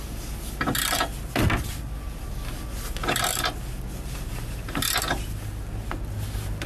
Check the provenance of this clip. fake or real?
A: real